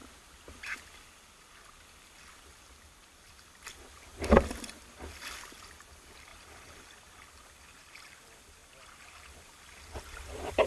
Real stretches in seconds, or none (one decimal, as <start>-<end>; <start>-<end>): 0.0-2.6; 4.1-5.1; 8.6-10.0